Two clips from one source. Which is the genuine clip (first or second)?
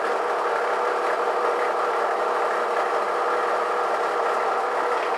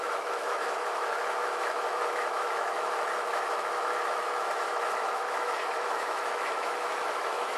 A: first